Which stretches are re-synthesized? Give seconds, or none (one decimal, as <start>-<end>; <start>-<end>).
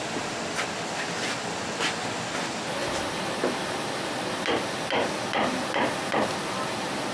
2.8-4.0